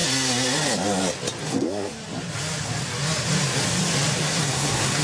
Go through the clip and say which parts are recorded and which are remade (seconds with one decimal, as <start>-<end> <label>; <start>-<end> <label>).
0.0-1.4 recorded; 1.4-1.9 remade; 1.9-4.2 recorded; 4.2-5.0 remade